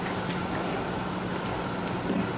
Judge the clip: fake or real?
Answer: fake